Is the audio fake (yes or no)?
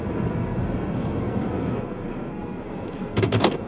yes